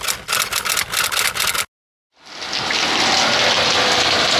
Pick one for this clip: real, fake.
real